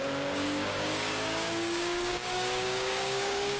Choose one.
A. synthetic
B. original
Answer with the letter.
A